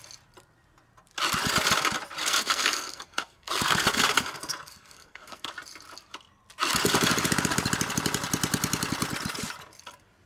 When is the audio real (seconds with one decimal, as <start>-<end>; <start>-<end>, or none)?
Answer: 0.0-2.2; 5.5-10.3